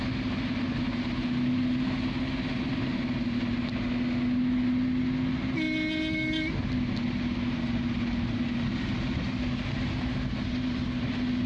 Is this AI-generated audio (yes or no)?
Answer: no